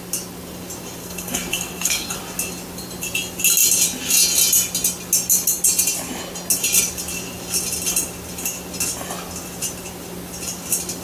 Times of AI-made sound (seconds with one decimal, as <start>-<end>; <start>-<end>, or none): 1.0-2.2